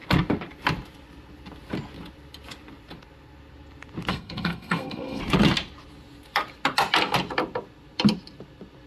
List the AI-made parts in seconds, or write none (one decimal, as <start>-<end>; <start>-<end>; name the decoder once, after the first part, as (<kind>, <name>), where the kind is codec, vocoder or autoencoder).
4.1-5.2 (codec, SNAC)